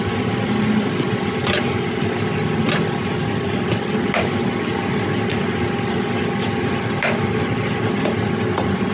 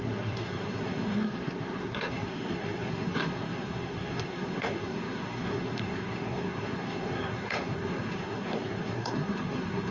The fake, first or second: second